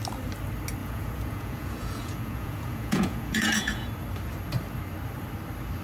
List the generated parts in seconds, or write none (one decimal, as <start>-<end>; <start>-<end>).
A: 0.8-3.9